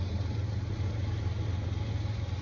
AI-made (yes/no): no